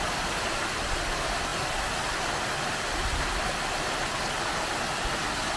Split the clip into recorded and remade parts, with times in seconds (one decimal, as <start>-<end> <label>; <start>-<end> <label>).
0.0-5.6 recorded